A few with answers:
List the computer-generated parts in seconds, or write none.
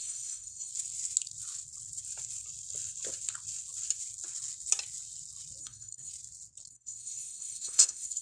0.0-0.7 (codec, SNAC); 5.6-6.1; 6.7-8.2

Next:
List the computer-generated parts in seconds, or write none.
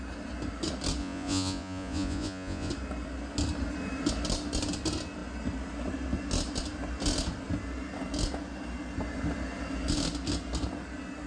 1.0-2.7 (vocoder, Vocos)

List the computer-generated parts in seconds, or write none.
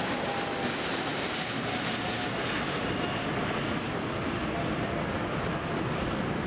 none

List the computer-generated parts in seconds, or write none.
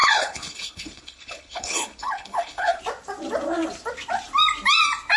0.0-2.8 (codec, HILCodec)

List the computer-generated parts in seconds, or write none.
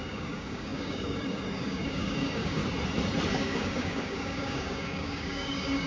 0.0-2.6 (codec, DAC); 3.3-5.9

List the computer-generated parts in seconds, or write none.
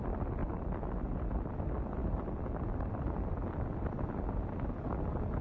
0.4-1.5 (vocoder, BigVGAN v2); 2.0-5.4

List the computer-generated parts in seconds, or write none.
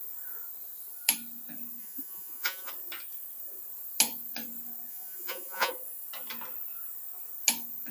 1.8-2.7 (vocoder, Vocos); 4.9-5.7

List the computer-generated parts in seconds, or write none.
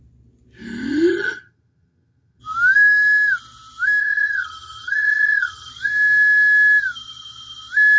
1.1-2.4 (vocoder, HiFi-GAN); 4.0-5.7